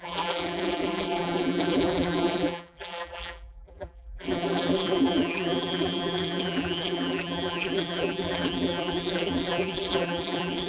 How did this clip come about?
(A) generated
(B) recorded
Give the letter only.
A